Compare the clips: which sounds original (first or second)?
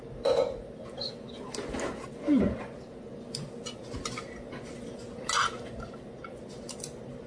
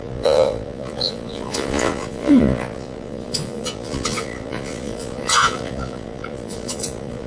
first